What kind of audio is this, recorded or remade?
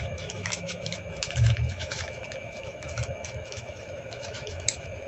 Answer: remade